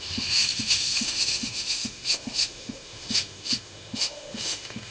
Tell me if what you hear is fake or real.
fake